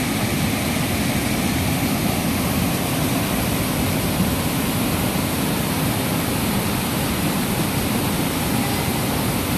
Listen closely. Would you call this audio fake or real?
real